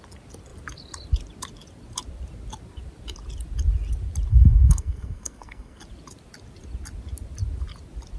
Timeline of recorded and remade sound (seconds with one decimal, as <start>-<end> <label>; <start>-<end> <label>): 0.0-4.3 recorded; 4.3-5.8 remade; 5.8-8.2 recorded